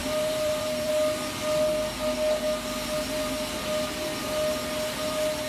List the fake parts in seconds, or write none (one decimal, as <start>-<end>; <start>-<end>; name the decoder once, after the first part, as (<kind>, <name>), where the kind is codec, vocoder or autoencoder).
0.0-0.9 (vocoder, BigVGAN v2)